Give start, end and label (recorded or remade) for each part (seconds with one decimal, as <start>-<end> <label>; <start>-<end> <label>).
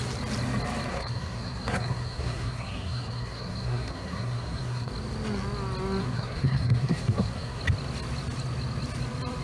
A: 0.0-0.9 recorded; 0.9-4.9 remade; 4.9-6.0 recorded; 6.0-7.6 remade; 7.6-9.4 recorded